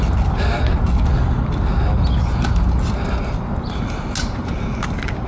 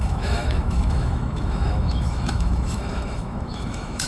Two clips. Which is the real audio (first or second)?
first